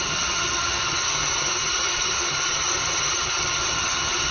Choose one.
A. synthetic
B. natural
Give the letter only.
A